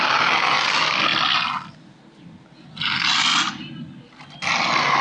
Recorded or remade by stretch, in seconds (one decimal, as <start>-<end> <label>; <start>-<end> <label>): 0.0-5.0 recorded